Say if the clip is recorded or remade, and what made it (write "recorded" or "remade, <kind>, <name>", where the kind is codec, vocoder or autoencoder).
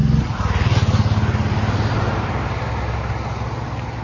recorded